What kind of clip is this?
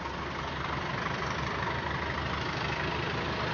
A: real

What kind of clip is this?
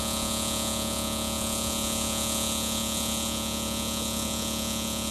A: fake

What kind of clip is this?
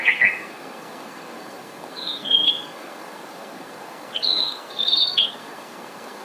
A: fake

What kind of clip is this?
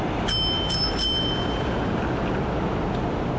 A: real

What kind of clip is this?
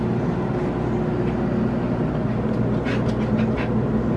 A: real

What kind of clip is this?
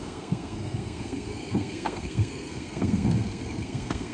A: fake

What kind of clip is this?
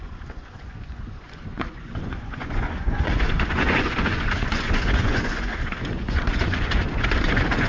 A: fake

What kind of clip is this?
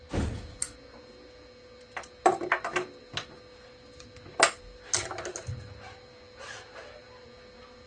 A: real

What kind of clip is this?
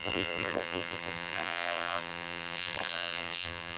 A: fake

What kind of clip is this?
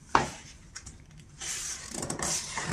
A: real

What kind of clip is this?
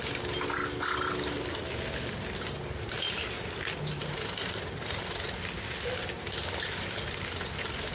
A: real